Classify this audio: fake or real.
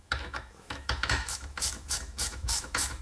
fake